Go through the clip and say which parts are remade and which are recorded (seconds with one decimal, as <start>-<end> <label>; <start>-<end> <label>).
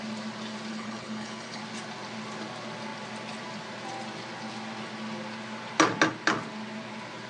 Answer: 0.0-0.7 recorded; 0.7-1.6 remade; 1.6-7.3 recorded